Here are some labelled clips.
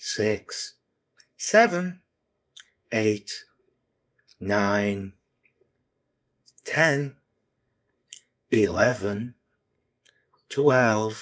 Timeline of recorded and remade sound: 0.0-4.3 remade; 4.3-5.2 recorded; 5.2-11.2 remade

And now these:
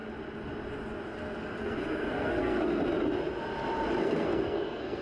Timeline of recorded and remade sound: 0.0-1.6 recorded; 1.6-2.8 remade; 2.8-4.0 recorded; 4.0-5.0 remade

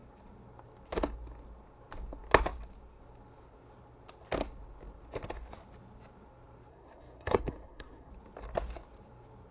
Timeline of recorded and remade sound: 0.0-6.7 recorded; 6.7-8.1 remade; 8.1-9.5 recorded